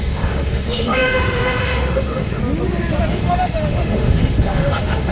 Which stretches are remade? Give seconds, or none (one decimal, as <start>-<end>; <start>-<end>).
0.0-2.4; 3.1-5.1